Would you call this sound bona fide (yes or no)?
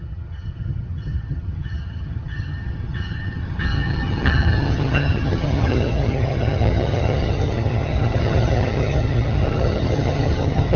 no